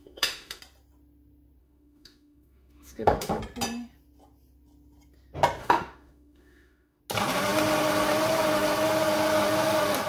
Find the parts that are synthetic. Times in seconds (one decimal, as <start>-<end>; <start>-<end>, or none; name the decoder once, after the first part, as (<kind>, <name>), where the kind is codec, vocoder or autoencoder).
0.0-0.6 (autoencoder, DAC-VAE); 1.6-3.4; 5.6-7.0